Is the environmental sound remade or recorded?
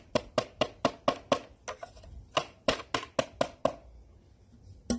recorded